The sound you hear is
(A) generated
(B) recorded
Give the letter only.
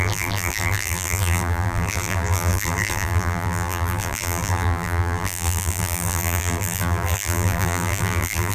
A